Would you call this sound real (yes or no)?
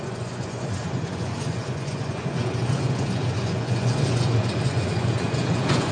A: no